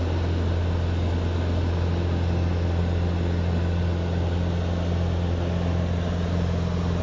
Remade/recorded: recorded